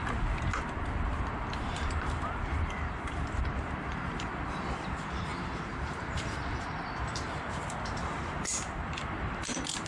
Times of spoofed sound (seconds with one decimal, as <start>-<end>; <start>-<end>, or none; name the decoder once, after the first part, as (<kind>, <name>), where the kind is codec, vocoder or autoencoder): 1.1-9.9 (vocoder, BigVGAN v2)